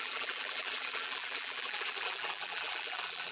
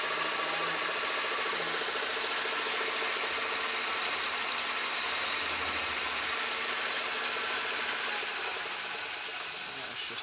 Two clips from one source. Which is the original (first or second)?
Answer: second